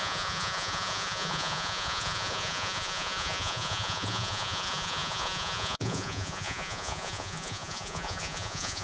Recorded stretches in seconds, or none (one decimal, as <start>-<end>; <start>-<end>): none